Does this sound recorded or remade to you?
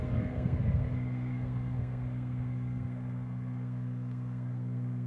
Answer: remade